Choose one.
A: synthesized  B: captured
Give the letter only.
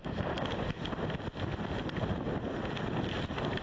B